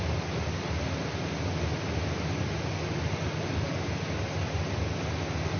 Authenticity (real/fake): real